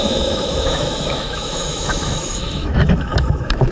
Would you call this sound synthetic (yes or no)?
yes